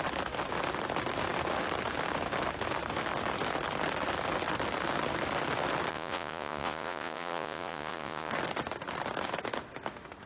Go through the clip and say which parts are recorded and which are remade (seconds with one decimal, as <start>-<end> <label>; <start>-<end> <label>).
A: 0.0-5.9 recorded; 5.9-8.3 remade; 8.3-10.3 recorded